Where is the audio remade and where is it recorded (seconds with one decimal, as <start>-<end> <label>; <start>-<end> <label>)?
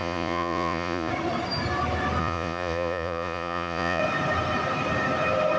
0.0-1.1 remade; 1.1-2.2 recorded; 2.2-4.0 remade; 4.0-5.6 recorded